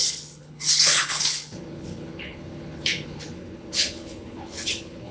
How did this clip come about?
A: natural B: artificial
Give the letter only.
B